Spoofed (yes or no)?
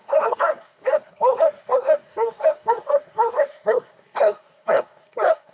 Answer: yes